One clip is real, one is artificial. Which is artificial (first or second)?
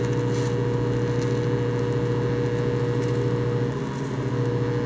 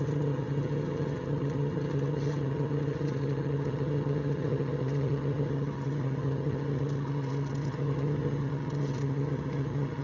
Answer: second